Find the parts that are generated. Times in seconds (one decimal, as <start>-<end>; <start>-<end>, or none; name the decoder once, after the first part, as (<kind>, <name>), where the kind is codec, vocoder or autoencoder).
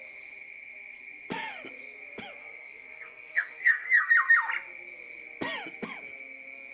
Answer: 2.4-4.1 (codec, SNAC)